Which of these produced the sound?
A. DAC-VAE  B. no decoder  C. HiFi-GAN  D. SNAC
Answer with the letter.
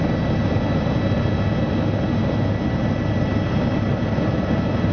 B